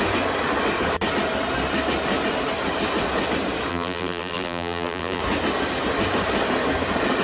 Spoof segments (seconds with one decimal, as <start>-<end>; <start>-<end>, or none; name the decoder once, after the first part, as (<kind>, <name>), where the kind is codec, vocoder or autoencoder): 3.7-5.2 (vocoder, BigVGAN v2)